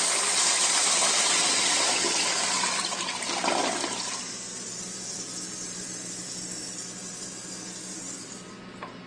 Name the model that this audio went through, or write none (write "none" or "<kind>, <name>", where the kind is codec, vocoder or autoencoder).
none